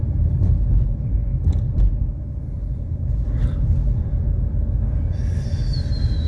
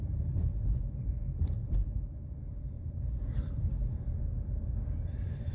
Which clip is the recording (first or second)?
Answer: first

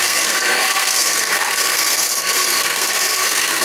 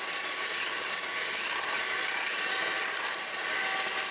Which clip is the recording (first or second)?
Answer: second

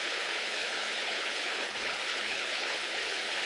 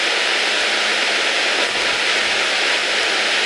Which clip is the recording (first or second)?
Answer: second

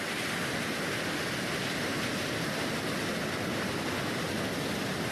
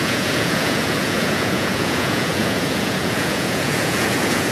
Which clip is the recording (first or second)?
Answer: first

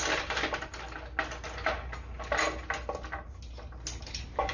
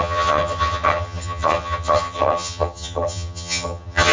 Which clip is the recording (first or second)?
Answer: first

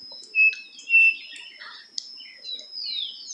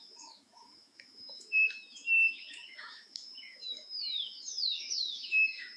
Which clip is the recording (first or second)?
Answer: first